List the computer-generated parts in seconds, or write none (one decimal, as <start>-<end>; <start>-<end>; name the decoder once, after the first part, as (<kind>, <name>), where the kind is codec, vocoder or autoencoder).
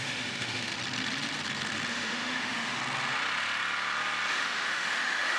0.0-0.7 (autoencoder, DAC-VAE); 1.9-2.8; 4.3-5.4